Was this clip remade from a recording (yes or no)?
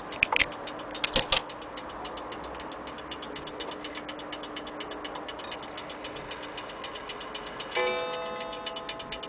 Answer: no